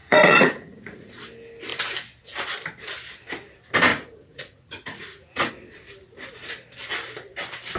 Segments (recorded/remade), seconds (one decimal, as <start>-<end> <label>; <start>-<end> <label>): 0.0-1.2 remade; 1.2-3.9 recorded; 3.9-5.5 remade; 5.5-7.8 recorded